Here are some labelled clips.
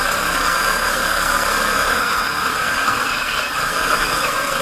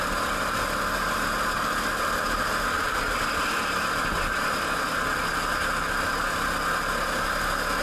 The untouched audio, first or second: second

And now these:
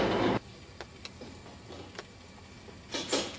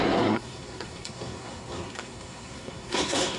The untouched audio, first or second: first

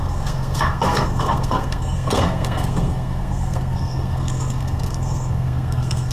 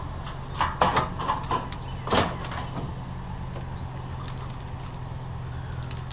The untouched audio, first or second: second